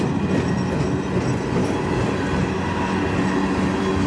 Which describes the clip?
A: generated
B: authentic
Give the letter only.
B